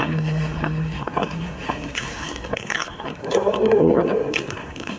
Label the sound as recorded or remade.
remade